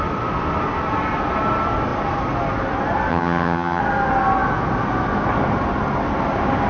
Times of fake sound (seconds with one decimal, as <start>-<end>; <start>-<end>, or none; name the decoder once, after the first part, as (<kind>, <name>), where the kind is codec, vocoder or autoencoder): 3.1-3.8 (vocoder, HiFi-GAN)